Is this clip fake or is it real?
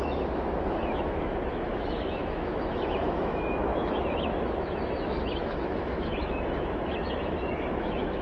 fake